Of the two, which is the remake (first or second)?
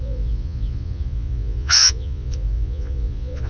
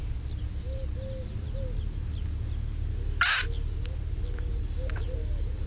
first